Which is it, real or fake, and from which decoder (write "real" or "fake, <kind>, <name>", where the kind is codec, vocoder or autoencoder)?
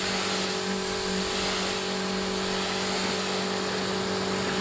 real